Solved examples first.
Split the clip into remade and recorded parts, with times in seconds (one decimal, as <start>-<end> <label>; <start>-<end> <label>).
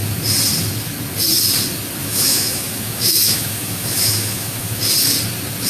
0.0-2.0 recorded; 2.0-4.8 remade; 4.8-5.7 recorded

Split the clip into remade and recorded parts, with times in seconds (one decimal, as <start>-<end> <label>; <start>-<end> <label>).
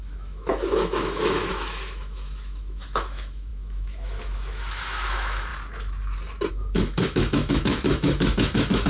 0.0-5.5 remade; 5.5-6.5 recorded; 6.5-8.9 remade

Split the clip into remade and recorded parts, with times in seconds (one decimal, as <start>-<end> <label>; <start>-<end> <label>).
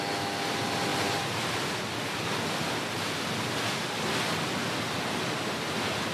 0.0-6.1 recorded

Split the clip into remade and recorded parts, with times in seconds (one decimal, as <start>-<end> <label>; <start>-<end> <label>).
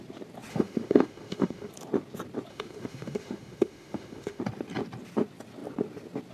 0.0-0.5 recorded; 0.5-1.7 remade; 1.7-2.5 recorded; 2.5-4.4 remade; 4.4-6.3 recorded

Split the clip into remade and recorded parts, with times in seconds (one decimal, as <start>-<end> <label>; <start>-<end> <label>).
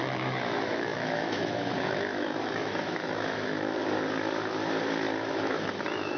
0.0-3.8 remade; 3.8-5.3 recorded; 5.3-6.2 remade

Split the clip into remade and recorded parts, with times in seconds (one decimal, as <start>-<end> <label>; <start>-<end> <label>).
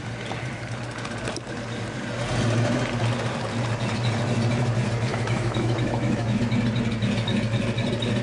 0.0-5.1 recorded; 5.1-6.4 remade; 6.4-8.2 recorded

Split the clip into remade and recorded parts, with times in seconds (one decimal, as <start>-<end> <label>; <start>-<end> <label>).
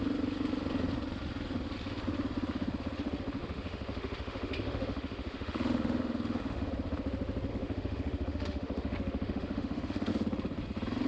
0.0-3.4 recorded; 3.4-6.7 remade; 6.7-7.5 recorded; 7.5-10.1 remade; 10.1-11.1 recorded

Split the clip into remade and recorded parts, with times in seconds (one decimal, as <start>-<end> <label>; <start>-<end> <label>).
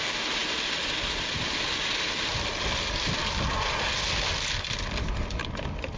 0.0-6.0 recorded